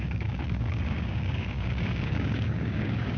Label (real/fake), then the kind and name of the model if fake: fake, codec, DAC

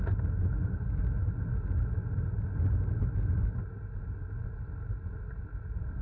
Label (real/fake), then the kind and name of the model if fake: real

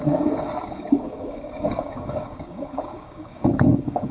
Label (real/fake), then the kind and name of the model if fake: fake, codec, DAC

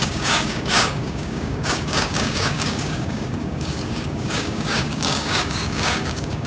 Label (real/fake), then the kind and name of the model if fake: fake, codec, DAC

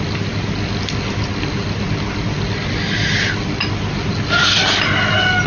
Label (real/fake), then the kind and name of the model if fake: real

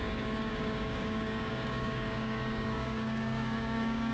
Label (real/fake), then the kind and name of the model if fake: fake, codec, DAC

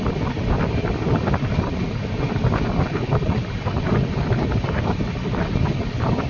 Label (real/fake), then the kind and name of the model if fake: real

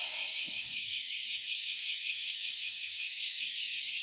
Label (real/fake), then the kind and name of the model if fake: fake, codec, DAC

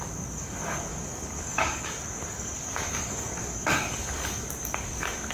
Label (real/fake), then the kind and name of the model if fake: fake, codec, DAC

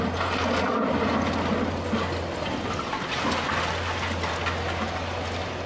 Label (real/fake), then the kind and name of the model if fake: real